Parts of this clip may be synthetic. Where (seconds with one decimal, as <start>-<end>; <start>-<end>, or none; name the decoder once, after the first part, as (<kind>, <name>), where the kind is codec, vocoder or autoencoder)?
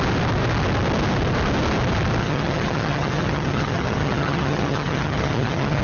2.2-5.8 (vocoder, HiFi-GAN)